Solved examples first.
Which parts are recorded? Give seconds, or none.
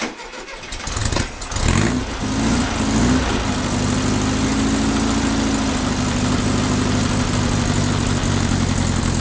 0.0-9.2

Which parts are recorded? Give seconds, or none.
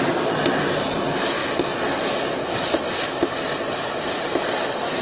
0.0-5.0